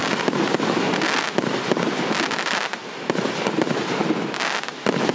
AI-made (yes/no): no